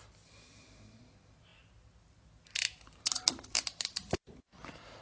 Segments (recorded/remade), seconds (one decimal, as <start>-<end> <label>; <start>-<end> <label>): 0.0-5.0 recorded